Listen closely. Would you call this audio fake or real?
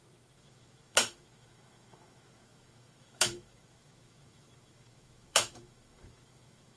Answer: fake